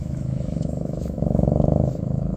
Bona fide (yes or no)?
no